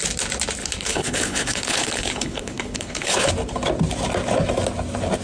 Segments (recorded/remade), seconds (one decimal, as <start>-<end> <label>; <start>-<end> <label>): 0.0-0.6 recorded; 0.6-3.3 remade; 3.3-5.2 recorded